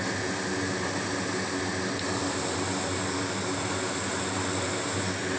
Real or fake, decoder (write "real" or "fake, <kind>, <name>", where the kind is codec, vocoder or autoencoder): real